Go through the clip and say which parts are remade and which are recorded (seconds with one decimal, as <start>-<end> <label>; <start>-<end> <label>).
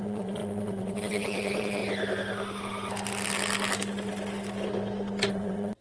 0.0-1.8 remade; 1.8-5.3 recorded; 5.3-5.8 remade